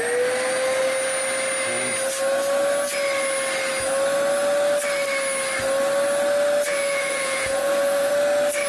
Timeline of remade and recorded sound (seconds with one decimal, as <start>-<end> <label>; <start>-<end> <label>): 0.0-6.7 recorded; 6.7-8.1 remade; 8.1-8.7 recorded